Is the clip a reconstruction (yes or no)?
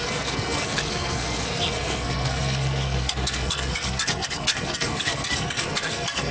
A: yes